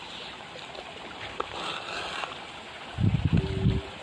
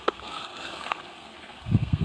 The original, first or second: first